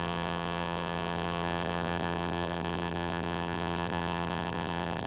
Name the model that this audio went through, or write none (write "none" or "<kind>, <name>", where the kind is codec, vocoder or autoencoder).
vocoder, BigVGAN v2